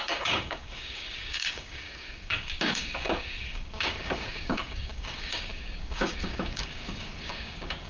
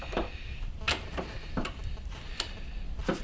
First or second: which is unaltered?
second